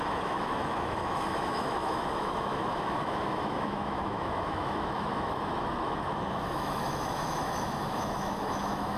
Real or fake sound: fake